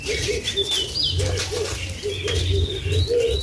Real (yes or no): yes